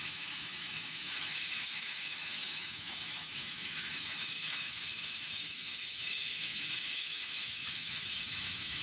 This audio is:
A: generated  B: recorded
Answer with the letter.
A